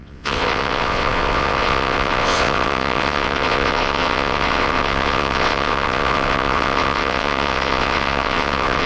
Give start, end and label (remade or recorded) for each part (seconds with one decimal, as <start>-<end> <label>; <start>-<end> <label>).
0.0-8.9 remade